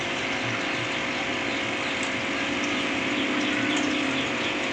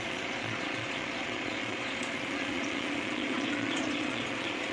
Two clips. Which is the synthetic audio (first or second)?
second